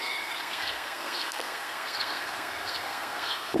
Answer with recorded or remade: remade